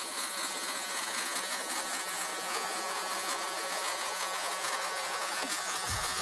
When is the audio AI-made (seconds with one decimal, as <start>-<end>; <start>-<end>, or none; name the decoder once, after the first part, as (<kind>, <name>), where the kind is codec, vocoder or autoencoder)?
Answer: 0.0-6.2 (vocoder, Vocos)